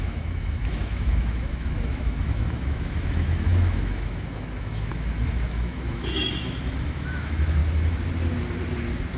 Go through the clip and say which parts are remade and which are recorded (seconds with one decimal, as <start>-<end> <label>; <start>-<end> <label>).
0.0-7.6 remade; 7.6-9.2 recorded